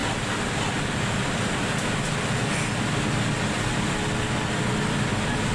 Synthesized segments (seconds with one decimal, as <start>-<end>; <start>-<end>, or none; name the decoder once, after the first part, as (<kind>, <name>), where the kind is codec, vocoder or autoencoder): none